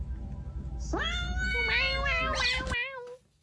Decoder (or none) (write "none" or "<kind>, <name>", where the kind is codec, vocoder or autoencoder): none